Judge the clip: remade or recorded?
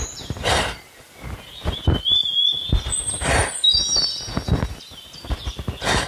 recorded